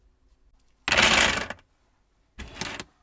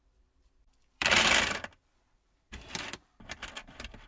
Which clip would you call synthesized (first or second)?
second